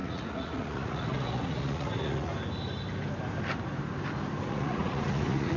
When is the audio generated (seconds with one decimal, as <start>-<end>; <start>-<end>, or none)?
0.0-2.3; 4.5-5.6